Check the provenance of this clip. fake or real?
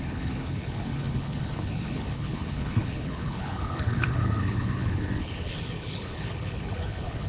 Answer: fake